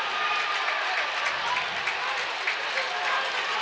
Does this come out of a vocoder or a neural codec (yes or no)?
no